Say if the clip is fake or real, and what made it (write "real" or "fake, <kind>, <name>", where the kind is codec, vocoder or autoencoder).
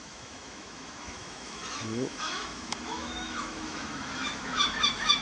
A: fake, autoencoder, DAC-VAE